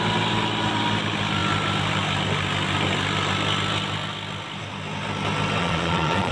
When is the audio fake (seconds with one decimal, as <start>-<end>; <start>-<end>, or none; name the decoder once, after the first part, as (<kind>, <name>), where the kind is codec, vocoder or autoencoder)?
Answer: 5.6-6.3 (vocoder, Vocos)